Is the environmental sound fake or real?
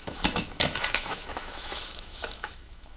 fake